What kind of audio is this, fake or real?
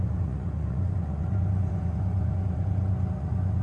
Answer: fake